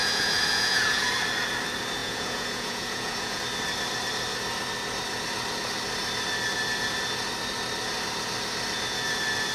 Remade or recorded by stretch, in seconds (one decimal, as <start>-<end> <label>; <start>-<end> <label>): 0.0-1.1 remade; 1.1-2.0 recorded; 2.0-3.4 remade; 3.4-9.5 recorded